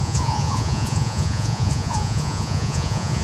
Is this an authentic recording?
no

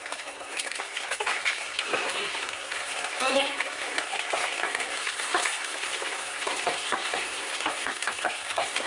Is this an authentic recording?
no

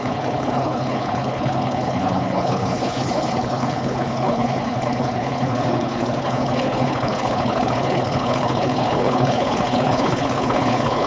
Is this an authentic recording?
no